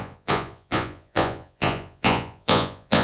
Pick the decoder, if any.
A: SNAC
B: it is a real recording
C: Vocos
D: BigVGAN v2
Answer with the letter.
C